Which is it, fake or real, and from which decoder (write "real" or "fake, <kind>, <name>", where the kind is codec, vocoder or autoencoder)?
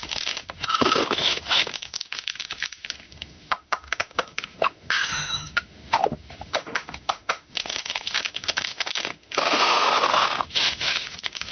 fake, autoencoder, DAC-VAE